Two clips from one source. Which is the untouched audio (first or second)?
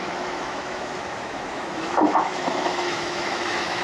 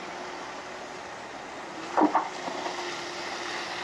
second